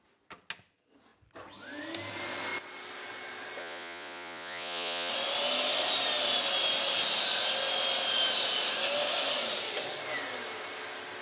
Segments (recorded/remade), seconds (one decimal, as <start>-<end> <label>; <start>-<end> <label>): 0.0-3.6 recorded; 3.6-5.1 remade; 5.1-11.2 recorded